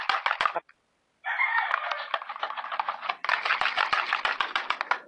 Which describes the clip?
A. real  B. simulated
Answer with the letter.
A